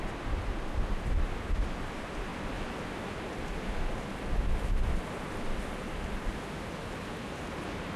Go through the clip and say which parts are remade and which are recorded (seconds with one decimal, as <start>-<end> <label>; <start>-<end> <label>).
0.0-8.0 recorded